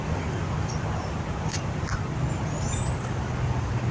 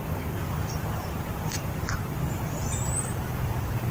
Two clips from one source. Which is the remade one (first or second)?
second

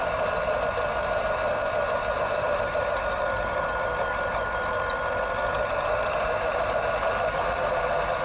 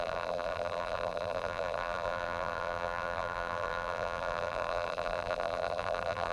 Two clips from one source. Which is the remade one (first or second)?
second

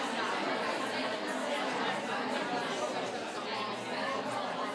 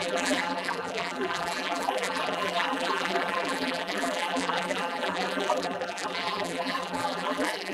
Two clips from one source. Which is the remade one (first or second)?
second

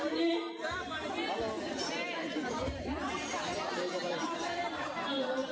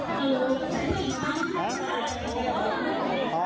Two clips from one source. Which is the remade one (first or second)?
first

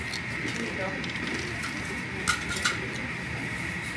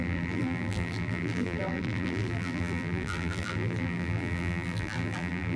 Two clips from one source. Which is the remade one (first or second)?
second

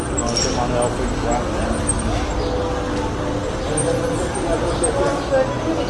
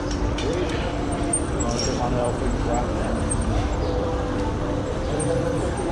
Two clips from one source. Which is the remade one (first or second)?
second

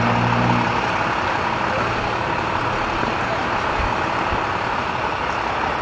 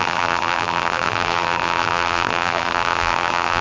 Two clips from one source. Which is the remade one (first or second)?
second